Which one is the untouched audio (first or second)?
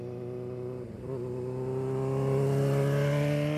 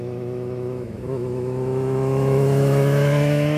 first